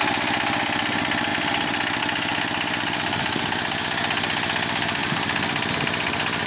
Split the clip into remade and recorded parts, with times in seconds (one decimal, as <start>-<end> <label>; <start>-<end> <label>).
0.0-6.5 recorded

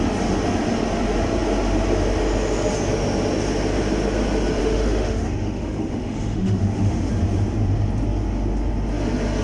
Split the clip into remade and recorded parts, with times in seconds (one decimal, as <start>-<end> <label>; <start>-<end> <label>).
0.0-4.6 recorded; 4.6-7.1 remade; 7.1-9.4 recorded

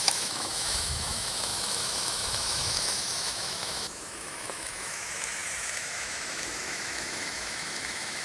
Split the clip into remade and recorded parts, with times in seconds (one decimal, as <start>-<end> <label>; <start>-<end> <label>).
0.0-8.2 remade

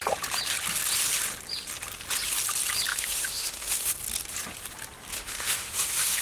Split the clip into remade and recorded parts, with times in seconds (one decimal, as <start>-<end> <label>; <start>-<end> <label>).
0.0-2.9 recorded; 2.9-3.9 remade; 3.9-5.1 recorded; 5.1-6.2 remade